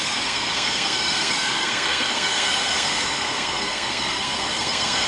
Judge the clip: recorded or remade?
remade